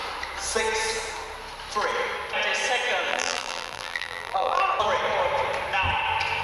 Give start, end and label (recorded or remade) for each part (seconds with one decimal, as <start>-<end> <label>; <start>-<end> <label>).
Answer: 0.0-3.1 recorded; 3.1-4.6 remade; 4.6-6.4 recorded